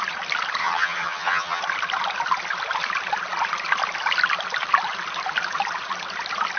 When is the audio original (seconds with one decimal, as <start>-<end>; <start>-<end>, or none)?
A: 0.0-0.6; 1.6-6.6